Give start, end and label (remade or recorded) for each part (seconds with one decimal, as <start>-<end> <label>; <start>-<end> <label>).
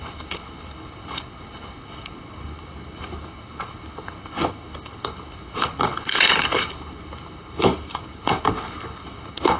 0.0-9.6 remade